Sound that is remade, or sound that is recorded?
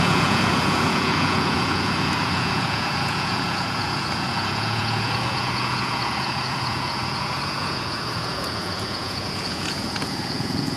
remade